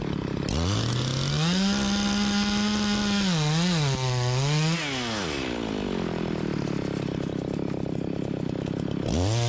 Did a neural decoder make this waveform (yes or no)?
no